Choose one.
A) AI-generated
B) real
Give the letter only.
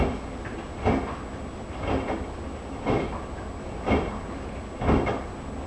B